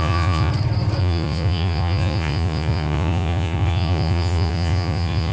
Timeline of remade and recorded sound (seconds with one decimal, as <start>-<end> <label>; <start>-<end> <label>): 0.0-0.5 remade; 0.5-1.0 recorded; 1.0-5.3 remade